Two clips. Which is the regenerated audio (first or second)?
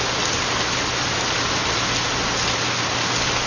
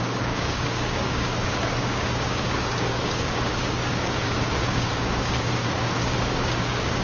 second